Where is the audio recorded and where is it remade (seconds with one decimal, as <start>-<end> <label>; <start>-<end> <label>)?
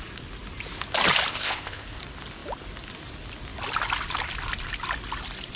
0.0-1.3 recorded; 1.3-2.0 remade; 2.0-5.6 recorded